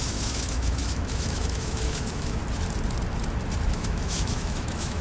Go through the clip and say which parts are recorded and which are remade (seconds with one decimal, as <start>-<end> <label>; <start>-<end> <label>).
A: 0.0-2.4 remade; 2.4-3.7 recorded; 3.7-5.0 remade